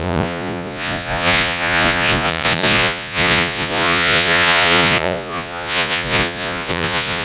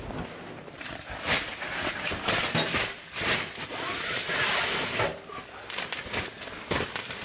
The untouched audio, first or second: second